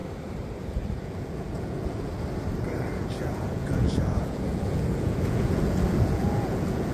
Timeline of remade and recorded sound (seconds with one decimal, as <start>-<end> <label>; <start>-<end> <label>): 0.0-0.6 recorded; 0.6-2.1 remade; 2.1-2.9 recorded; 2.9-6.9 remade